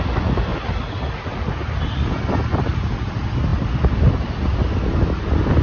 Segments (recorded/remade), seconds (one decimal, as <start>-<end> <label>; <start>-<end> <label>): 0.0-5.6 recorded